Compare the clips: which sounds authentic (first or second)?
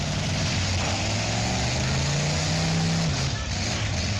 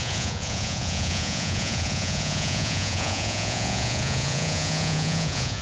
first